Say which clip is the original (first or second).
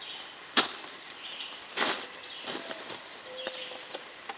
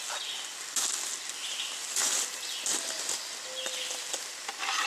second